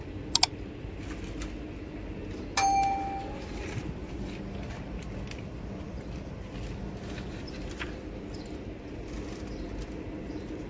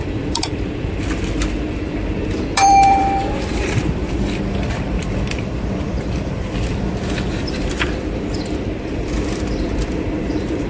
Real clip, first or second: first